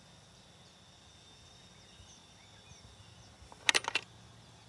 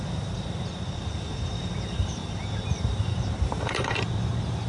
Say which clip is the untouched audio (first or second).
first